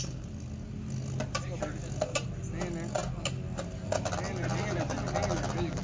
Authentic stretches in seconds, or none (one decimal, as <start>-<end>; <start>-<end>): 0.0-5.8